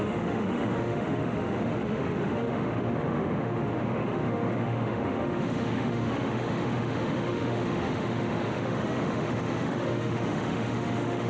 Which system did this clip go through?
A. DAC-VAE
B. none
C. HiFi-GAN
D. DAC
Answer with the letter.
A